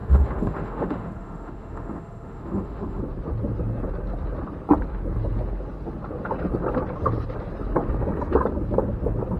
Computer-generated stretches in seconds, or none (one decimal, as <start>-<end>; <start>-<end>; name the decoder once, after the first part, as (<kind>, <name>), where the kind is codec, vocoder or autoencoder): 0.0-3.0 (autoencoder, DAC-VAE)